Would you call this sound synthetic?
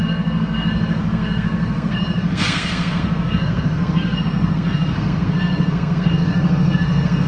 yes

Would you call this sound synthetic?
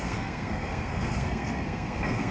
yes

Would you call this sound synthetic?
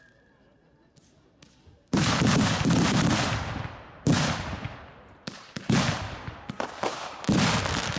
yes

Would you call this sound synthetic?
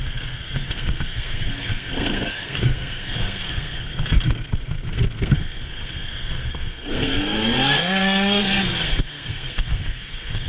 yes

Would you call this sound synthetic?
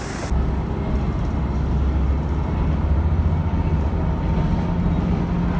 no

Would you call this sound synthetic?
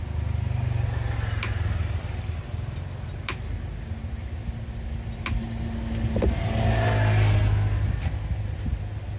no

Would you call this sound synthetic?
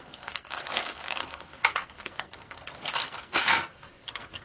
yes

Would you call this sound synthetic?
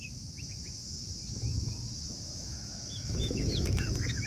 yes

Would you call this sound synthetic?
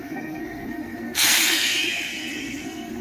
yes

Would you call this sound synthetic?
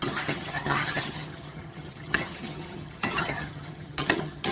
yes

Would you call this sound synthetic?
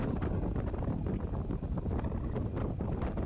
no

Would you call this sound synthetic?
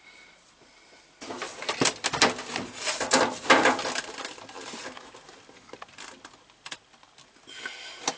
no